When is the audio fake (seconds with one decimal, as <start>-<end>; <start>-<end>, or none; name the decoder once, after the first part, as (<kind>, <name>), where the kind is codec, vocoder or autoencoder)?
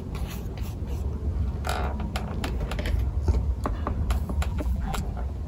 4.5-5.0 (vocoder, BigVGAN v2)